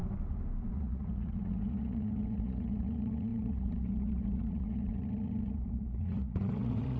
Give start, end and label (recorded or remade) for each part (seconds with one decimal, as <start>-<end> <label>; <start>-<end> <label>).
0.0-0.7 recorded; 0.7-7.0 remade